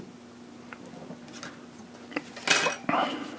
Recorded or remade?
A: recorded